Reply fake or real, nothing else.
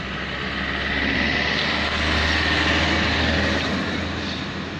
real